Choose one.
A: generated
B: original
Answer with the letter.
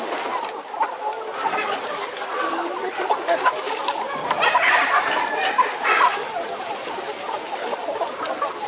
B